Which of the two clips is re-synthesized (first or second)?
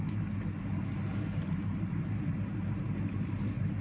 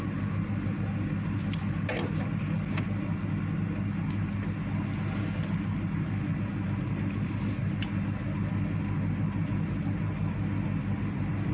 first